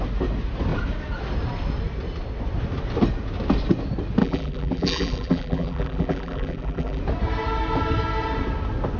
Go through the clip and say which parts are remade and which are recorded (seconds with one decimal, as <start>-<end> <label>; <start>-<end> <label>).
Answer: 0.0-4.2 recorded; 4.2-7.0 remade; 7.0-9.0 recorded